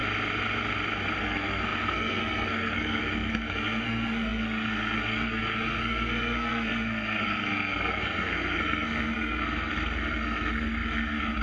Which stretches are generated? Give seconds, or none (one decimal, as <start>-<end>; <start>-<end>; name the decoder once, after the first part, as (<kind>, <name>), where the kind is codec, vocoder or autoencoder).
1.2-11.4 (codec, SNAC)